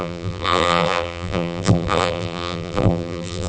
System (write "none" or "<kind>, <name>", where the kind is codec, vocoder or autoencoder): vocoder, BigVGAN v2